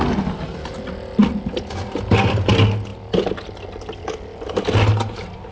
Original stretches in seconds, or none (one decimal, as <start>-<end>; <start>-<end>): 0.0-5.5